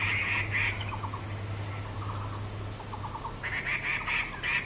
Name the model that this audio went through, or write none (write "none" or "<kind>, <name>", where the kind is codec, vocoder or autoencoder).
none